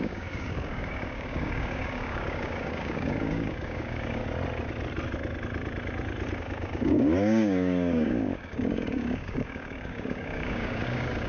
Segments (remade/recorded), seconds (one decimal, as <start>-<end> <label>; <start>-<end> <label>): 0.0-4.2 remade; 4.2-6.4 recorded; 6.4-11.3 remade